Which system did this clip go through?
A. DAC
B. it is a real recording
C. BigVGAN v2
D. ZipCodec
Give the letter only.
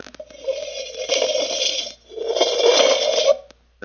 B